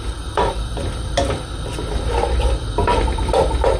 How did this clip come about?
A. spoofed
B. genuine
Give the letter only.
B